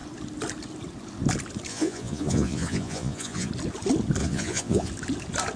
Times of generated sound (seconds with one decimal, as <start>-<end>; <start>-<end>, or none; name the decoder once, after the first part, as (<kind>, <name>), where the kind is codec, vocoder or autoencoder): 1.7-3.5 (vocoder, Vocos); 4.2-4.9

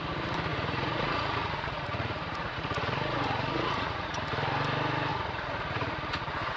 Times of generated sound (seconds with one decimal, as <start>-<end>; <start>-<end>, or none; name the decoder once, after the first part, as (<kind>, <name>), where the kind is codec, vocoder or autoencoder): 0.5-4.2 (vocoder, Vocos); 5.1-6.6

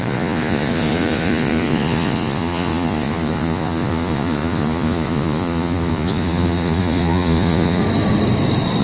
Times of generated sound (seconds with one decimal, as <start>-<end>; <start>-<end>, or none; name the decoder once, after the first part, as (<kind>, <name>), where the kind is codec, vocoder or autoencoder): 0.0-7.8 (vocoder, Vocos)

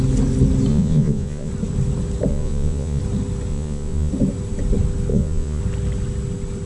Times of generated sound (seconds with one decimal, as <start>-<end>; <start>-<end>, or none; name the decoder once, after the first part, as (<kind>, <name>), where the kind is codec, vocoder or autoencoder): 0.7-1.5 (vocoder, Vocos); 2.3-3.0; 3.5-4.1; 5.1-5.6